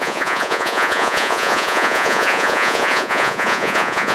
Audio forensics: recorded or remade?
remade